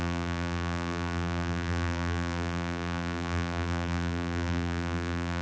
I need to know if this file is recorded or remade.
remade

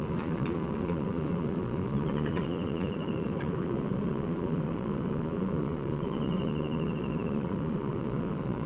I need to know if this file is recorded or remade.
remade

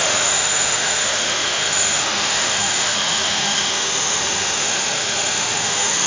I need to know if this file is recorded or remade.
remade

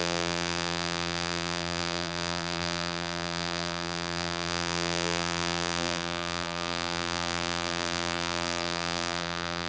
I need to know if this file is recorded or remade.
remade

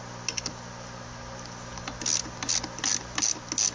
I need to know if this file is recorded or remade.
recorded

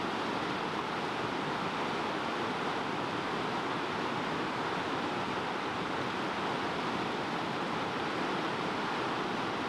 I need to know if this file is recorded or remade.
recorded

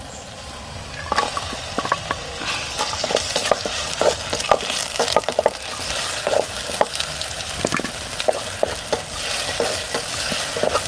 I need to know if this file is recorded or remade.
recorded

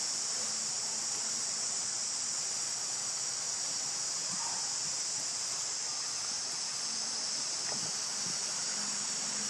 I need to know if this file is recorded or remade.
recorded